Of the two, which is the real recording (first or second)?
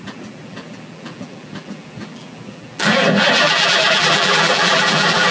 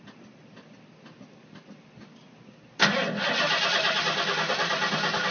second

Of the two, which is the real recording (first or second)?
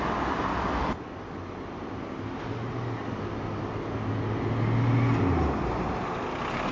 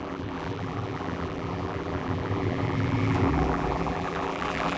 first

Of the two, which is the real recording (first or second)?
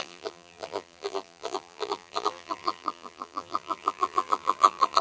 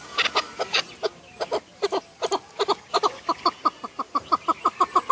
second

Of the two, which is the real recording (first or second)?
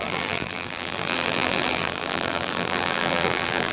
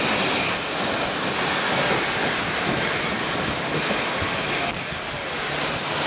second